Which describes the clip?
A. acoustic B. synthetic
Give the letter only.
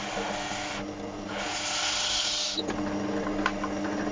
A